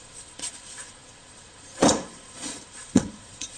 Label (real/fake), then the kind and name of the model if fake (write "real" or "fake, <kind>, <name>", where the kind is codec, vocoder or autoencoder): fake, vocoder, Vocos